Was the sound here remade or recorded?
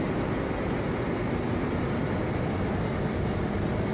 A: remade